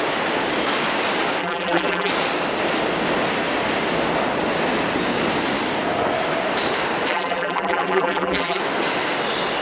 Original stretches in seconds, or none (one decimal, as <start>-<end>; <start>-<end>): 0.0-1.4; 2.1-7.1; 8.6-9.6

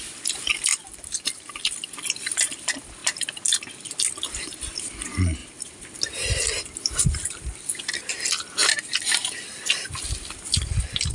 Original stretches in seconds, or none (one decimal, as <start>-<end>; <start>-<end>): 3.0-4.2; 8.6-9.1

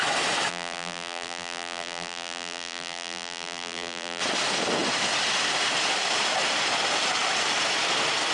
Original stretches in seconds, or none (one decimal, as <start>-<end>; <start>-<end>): 0.0-0.5; 4.2-8.3

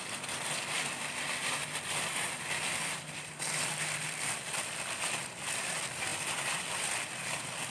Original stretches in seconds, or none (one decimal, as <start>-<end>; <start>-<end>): none

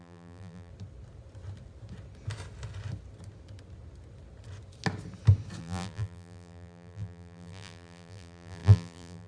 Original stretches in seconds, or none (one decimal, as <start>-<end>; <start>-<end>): 0.7-5.6

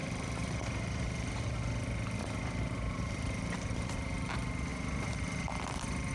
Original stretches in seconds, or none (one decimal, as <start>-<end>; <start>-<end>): 1.3-2.2; 4.3-6.1

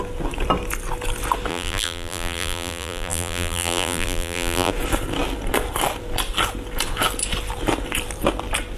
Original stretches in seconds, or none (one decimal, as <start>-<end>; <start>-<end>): 0.0-1.5; 4.7-8.8

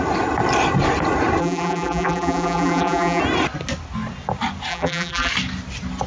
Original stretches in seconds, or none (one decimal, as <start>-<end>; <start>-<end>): 0.0-1.4; 3.2-4.7; 5.3-6.1